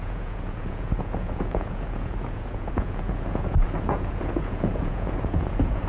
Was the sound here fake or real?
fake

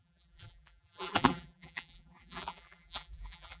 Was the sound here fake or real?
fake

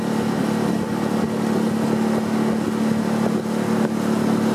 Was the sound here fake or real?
real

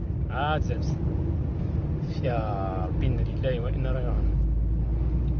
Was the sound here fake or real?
real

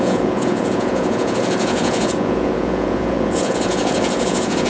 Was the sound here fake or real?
fake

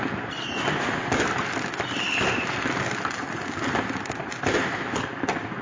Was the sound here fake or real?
real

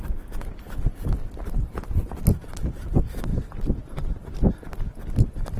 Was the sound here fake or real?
real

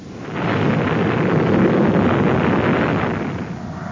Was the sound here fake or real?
real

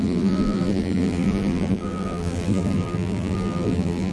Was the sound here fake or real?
fake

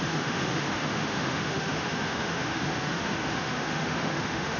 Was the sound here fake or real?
fake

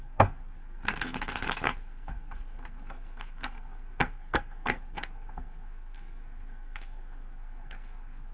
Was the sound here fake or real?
fake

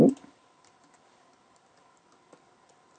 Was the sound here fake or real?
real